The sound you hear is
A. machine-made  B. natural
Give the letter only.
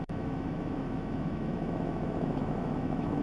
A